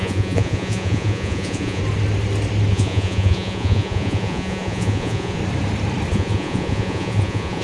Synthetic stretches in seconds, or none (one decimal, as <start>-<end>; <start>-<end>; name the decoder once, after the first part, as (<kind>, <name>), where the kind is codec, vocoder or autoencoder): 0.0-1.8 (vocoder, Vocos); 2.7-5.4; 6.1-7.6